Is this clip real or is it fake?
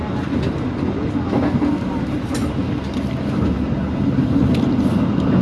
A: real